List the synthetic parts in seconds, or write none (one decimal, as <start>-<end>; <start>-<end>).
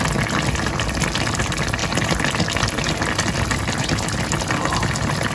none